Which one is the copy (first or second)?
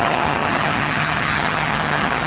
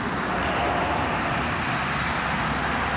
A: first